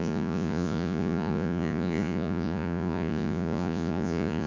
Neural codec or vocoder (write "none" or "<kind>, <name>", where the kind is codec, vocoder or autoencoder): vocoder, Vocos